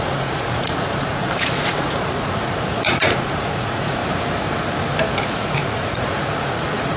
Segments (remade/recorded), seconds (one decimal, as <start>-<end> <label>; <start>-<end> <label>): 0.0-4.0 remade; 4.0-5.3 recorded; 5.3-7.0 remade